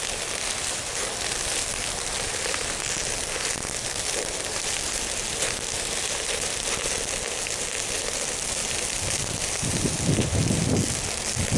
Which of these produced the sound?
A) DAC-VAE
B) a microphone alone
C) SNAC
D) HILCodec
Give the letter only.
B